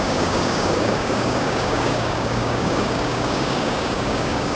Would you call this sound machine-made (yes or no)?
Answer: yes